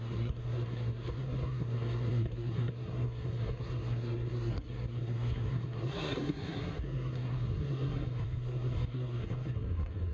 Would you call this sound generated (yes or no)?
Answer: yes